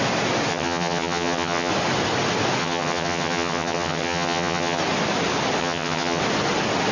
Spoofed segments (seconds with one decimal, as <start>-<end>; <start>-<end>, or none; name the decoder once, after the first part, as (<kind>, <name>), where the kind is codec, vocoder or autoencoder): 0.5-1.7 (vocoder, HiFi-GAN); 2.6-4.8; 5.6-6.2